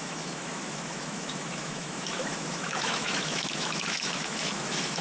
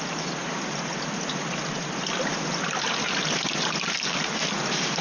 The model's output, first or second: first